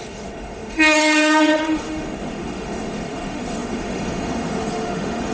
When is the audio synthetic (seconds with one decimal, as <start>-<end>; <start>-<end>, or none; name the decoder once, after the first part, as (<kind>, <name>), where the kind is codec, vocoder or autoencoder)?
0.0-5.3 (autoencoder, DAC-VAE)